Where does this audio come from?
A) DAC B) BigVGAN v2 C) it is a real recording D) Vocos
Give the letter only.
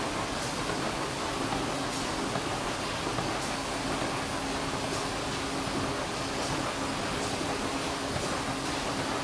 C